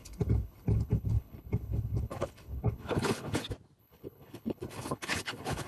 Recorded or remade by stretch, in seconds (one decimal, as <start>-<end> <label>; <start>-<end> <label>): 0.0-3.4 remade; 3.4-3.8 recorded; 3.8-5.7 remade